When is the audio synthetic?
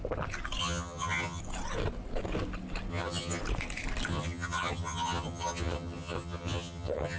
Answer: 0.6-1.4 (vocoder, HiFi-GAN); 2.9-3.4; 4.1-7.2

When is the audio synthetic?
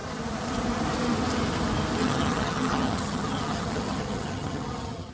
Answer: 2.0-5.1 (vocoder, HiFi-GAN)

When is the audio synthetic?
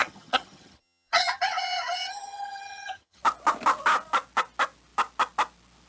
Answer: 0.0-3.2 (vocoder, HiFi-GAN)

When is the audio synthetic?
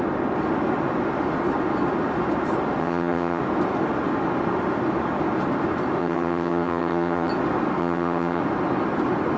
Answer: 2.8-3.4 (vocoder, HiFi-GAN); 6.0-7.3; 7.8-8.4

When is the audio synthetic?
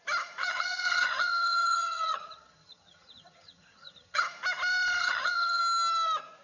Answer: 0.4-4.2 (vocoder, HiFi-GAN); 5.0-5.6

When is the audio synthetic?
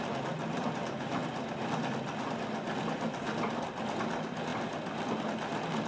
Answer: none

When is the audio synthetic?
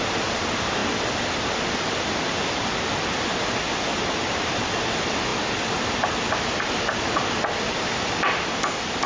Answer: none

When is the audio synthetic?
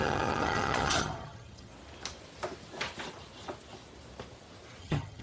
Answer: 0.0-1.7 (vocoder, HiFi-GAN); 4.8-5.2